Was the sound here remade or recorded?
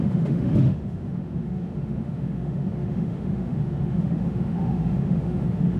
remade